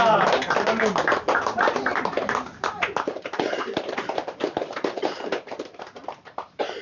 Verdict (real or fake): fake